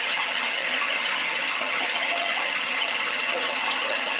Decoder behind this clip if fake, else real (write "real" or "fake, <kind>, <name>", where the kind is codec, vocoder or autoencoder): fake, vocoder, HiFi-GAN